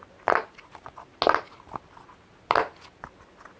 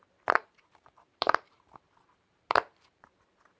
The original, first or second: first